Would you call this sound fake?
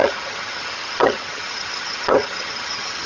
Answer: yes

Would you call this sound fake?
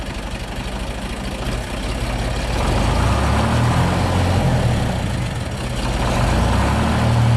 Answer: no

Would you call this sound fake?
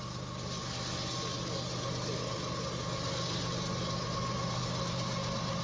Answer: no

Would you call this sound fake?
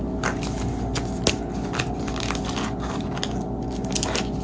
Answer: no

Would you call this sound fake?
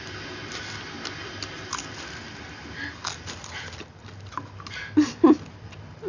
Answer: no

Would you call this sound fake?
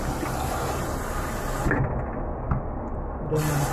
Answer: no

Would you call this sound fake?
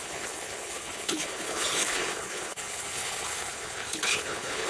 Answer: yes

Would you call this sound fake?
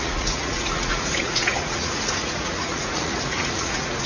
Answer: yes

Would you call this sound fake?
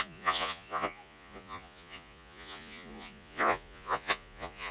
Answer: yes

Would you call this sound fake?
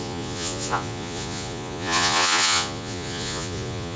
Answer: yes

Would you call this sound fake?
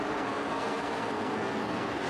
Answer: yes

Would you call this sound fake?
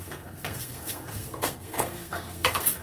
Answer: yes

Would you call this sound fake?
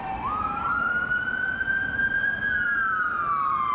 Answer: yes